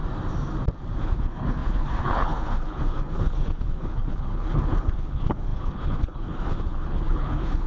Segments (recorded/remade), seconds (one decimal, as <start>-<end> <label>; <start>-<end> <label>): 0.0-1.0 recorded; 1.0-7.7 remade